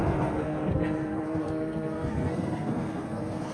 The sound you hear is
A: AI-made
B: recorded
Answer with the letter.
A